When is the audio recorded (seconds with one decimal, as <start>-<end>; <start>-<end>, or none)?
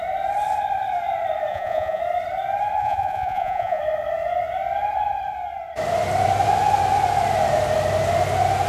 0.0-1.5; 2.0-2.8; 3.8-8.7